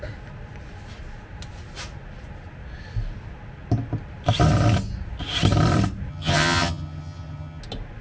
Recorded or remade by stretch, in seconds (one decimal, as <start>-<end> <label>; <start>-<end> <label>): 0.0-6.1 recorded; 6.1-7.6 remade; 7.6-8.0 recorded